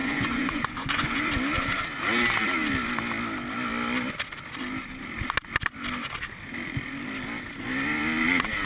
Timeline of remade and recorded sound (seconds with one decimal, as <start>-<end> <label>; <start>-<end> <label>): 0.0-1.3 remade; 1.3-8.7 recorded